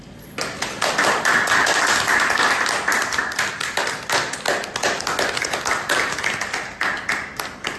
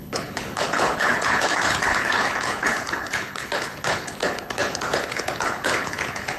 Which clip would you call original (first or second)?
first